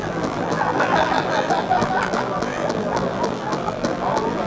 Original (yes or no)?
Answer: no